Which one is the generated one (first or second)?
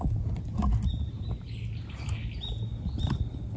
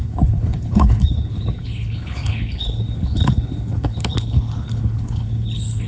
second